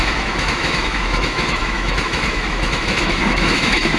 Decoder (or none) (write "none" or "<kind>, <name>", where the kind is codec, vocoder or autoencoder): autoencoder, DAC-VAE